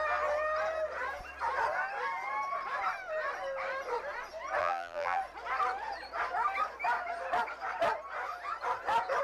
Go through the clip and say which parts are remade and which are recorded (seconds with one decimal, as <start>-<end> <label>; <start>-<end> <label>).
0.0-4.6 recorded; 4.6-5.2 remade; 5.2-9.2 recorded